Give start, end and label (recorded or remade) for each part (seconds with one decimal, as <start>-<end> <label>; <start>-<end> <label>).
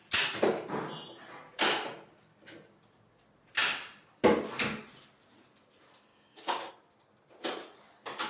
0.0-6.1 recorded; 6.1-6.7 remade; 6.7-8.3 recorded